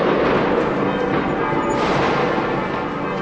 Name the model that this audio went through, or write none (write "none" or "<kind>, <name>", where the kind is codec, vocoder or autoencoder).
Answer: none